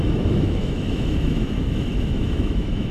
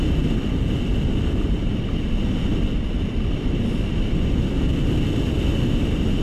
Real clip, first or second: second